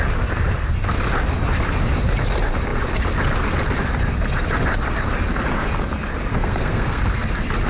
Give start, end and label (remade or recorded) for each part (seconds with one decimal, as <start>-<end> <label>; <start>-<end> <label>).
0.0-6.3 recorded; 6.3-7.0 remade; 7.0-7.7 recorded